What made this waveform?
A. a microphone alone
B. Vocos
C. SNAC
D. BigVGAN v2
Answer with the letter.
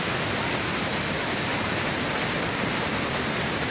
D